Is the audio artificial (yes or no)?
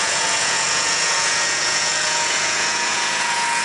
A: yes